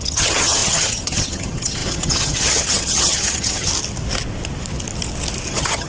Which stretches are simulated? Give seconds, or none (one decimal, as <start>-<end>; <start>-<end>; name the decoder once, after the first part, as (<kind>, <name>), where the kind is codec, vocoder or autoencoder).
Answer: 0.0-3.7 (vocoder, HiFi-GAN); 5.5-5.9